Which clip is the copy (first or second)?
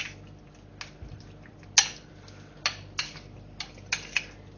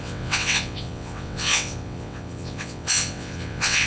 second